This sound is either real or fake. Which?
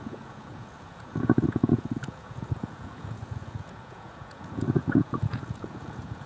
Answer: fake